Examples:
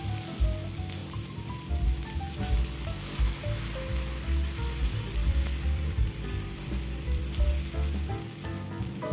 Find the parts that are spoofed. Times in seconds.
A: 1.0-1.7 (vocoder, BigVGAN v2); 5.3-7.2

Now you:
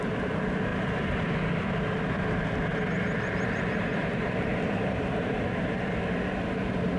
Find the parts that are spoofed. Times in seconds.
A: 0.7-1.8 (vocoder, BigVGAN v2); 2.7-5.4

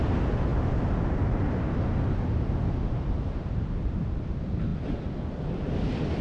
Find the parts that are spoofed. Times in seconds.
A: 0.5-4.2 (vocoder, BigVGAN v2)